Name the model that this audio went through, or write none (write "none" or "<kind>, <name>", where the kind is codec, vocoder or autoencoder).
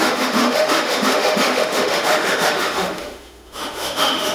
autoencoder, DAC-VAE